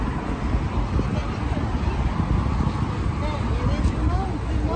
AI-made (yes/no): no